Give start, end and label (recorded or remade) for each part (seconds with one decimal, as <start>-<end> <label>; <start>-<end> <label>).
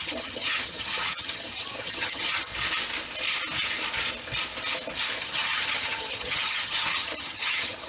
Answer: 0.0-2.5 remade; 2.5-5.2 recorded; 5.2-7.9 remade